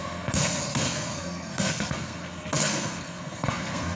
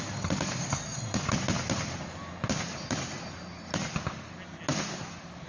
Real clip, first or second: second